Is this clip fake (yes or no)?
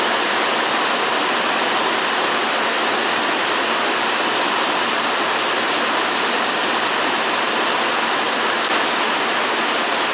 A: no